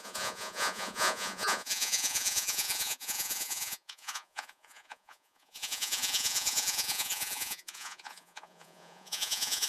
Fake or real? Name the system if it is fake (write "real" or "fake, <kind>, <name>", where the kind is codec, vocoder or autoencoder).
fake, vocoder, Vocos